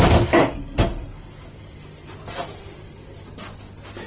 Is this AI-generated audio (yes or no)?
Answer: no